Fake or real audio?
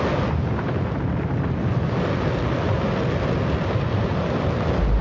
real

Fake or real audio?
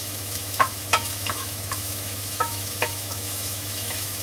fake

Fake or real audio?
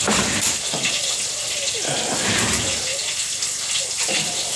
real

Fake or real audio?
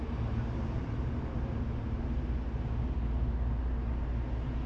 real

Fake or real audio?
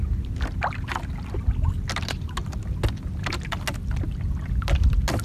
real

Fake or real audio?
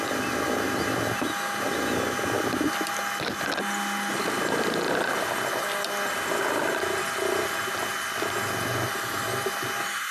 real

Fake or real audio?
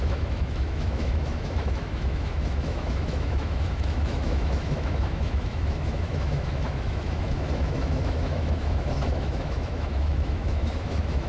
fake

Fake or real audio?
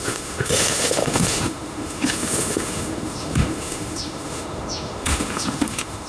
fake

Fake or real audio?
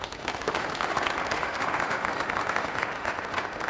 fake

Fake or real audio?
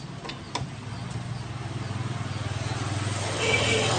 real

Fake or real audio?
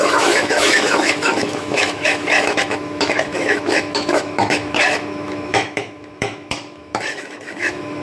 fake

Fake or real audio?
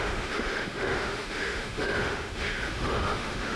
fake